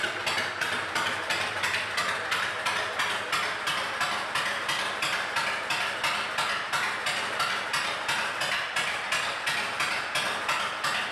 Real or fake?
real